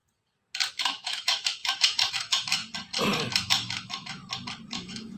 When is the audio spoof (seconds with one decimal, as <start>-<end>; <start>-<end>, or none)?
0.7-2.6; 3.3-4.2; 4.7-5.2